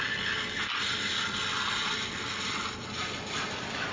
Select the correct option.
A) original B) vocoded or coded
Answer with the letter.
A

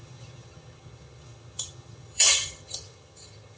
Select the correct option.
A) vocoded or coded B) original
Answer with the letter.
A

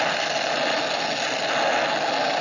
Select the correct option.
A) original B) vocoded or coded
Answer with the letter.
A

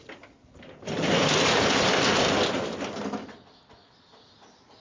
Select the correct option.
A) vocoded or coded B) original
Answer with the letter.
B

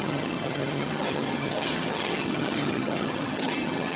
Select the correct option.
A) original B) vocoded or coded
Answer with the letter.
B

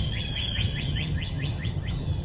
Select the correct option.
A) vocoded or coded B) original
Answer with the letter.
A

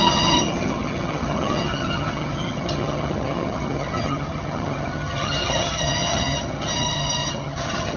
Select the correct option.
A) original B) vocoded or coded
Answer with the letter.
B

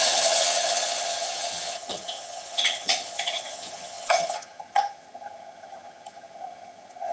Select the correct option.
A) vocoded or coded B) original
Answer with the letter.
A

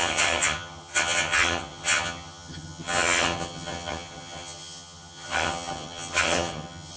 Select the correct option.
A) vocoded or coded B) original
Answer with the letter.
A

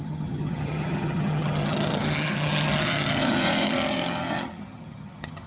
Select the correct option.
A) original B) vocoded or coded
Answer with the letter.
B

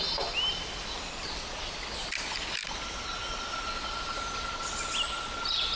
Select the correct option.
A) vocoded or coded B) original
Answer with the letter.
B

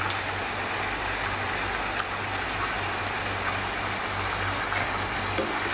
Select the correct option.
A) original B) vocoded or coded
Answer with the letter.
A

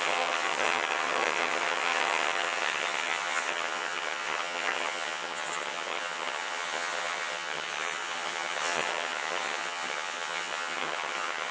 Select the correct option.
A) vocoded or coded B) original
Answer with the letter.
A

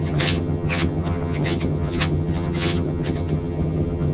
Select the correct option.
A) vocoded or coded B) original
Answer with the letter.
A